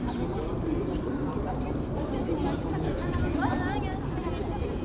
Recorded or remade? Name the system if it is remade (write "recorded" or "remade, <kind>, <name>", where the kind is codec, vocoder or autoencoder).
recorded